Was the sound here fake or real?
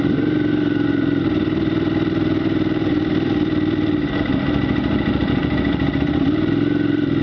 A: fake